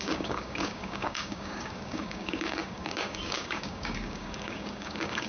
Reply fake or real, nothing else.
fake